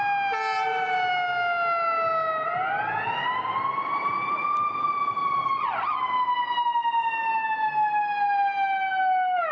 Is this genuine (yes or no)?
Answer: yes